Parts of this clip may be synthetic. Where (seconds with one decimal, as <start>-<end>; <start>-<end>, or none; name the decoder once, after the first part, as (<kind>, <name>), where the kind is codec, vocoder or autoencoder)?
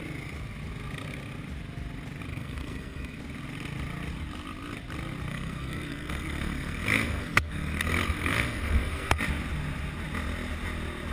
2.3-3.2 (codec, SNAC); 5.3-9.2